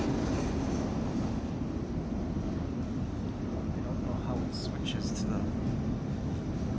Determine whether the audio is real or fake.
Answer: real